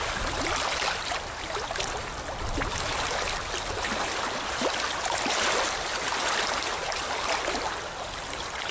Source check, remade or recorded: recorded